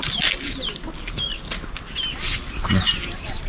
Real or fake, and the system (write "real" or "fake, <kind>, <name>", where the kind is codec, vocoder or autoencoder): real